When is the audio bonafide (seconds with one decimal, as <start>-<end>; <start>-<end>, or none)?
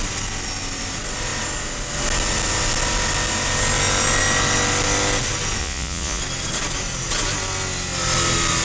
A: 0.0-5.6; 6.2-8.6